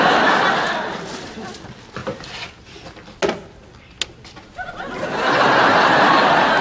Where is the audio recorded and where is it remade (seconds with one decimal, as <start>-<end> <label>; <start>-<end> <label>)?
0.0-6.6 recorded